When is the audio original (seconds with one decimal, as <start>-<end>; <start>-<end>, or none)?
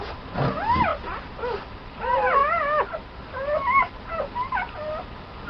0.0-5.5